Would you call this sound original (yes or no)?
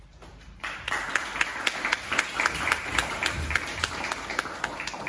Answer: yes